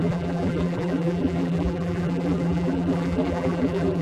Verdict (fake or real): fake